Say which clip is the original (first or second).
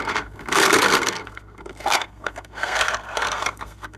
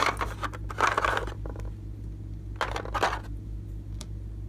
second